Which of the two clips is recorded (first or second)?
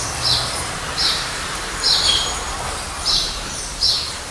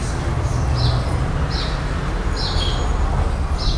second